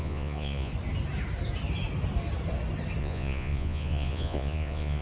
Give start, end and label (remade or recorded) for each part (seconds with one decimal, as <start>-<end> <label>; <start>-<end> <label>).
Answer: 0.0-0.7 remade; 0.7-3.0 recorded; 3.0-5.0 remade